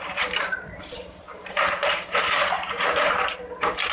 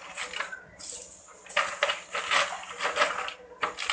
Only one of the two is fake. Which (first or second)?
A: first